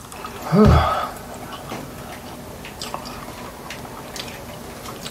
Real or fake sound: real